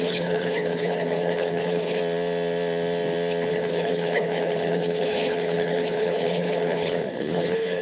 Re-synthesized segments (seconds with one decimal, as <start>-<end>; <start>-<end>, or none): 0.0-2.0; 3.5-7.8